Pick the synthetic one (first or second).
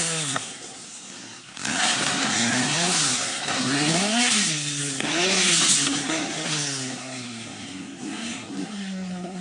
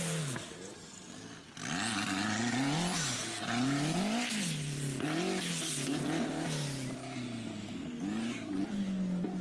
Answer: first